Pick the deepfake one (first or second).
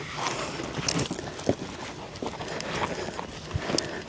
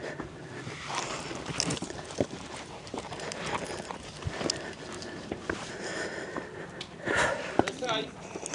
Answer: second